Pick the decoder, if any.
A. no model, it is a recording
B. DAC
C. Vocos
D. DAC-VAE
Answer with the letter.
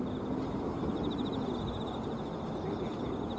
A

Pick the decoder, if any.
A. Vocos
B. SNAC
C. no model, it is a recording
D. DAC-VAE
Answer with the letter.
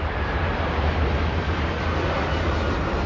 C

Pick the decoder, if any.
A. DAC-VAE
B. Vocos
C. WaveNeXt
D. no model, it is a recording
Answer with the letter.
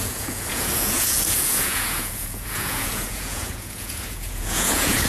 B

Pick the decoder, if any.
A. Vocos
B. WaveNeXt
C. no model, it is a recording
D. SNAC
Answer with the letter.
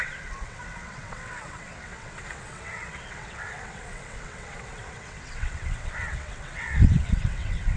B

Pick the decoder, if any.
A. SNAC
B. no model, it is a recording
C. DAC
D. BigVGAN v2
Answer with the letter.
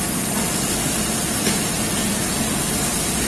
B